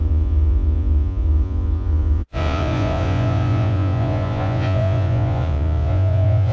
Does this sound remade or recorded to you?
remade